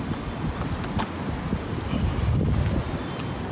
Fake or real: real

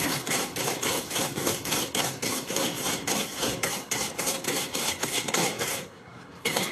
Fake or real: fake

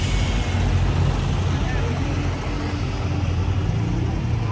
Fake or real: real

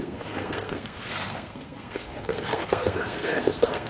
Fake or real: fake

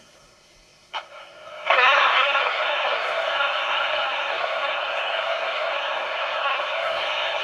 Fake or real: fake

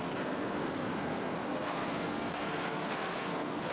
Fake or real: fake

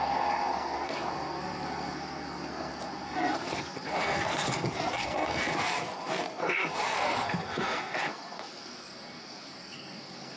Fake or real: fake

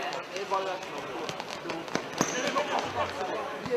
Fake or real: real